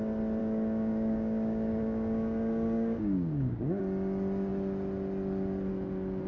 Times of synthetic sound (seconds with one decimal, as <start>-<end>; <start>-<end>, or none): 0.4-3.8